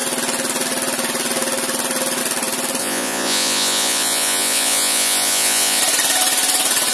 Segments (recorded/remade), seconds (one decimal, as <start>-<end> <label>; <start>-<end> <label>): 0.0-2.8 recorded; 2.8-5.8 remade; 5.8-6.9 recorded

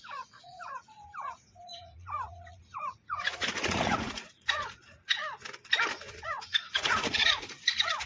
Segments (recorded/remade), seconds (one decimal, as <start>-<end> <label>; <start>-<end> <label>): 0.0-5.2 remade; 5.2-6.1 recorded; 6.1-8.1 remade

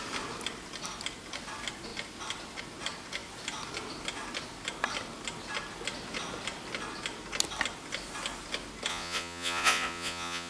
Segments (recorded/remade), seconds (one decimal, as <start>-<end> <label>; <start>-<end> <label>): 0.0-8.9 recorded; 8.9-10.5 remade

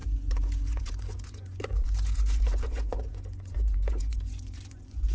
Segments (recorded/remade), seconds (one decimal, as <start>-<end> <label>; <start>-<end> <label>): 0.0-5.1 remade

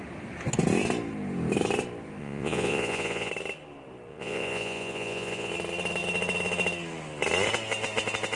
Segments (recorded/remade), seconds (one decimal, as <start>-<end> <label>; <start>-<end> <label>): 0.0-2.2 recorded; 2.2-3.3 remade; 3.3-4.1 recorded; 4.1-5.5 remade; 5.5-8.4 recorded

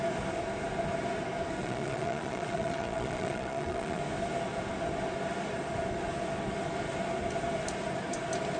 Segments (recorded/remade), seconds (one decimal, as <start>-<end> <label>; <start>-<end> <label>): 0.0-1.6 recorded; 1.6-4.0 remade; 4.0-8.6 recorded

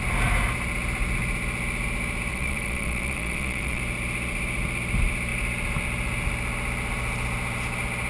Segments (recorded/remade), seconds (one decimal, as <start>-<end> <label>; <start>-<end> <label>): 0.0-2.3 recorded; 2.3-3.8 remade; 3.8-8.1 recorded

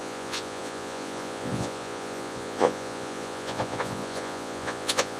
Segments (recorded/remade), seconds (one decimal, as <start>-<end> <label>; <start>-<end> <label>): 0.0-5.2 remade